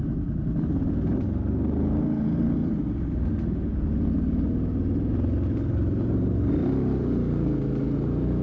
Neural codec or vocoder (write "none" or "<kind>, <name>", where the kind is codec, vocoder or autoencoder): none